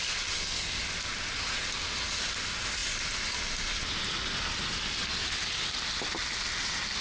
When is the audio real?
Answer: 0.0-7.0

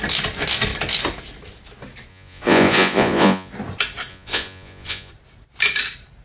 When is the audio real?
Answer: 0.0-2.1; 3.5-4.1; 5.1-6.2

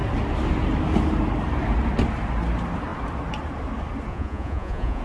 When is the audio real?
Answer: 0.0-4.1

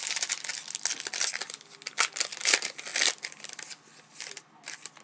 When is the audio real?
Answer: 0.0-5.0

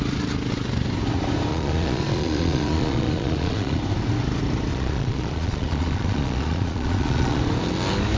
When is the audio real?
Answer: 0.0-1.5; 3.8-4.7; 7.4-8.2

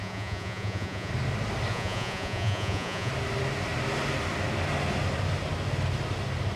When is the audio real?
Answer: 1.1-1.7; 3.1-6.6

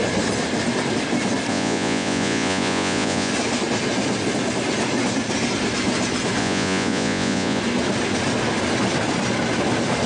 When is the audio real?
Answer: 0.0-1.5; 3.3-6.4; 7.6-10.1

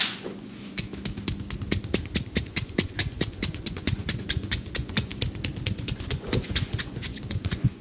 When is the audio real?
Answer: 0.9-2.4; 5.1-5.7